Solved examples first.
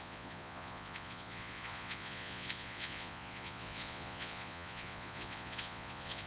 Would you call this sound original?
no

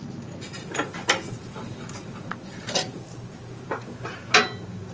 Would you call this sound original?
yes